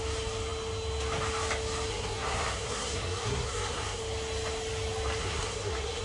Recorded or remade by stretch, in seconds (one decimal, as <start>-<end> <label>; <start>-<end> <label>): 0.0-1.9 recorded; 1.9-4.0 remade; 4.0-5.2 recorded; 5.2-6.0 remade